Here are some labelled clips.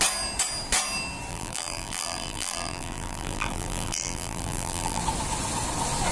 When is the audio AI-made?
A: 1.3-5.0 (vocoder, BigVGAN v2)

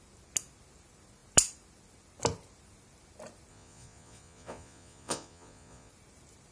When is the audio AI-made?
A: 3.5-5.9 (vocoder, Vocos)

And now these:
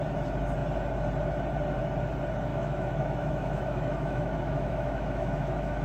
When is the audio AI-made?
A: 2.5-5.8 (autoencoder, DAC-VAE)

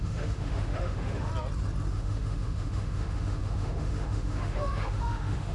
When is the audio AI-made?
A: 0.0-1.3 (autoencoder, DAC-VAE); 1.9-5.5

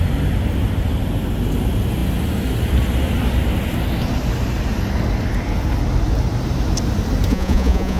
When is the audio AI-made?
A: 7.3-8.0 (vocoder, Vocos)